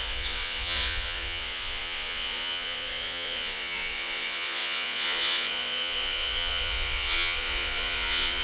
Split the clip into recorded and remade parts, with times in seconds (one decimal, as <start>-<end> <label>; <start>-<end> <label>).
0.0-8.4 remade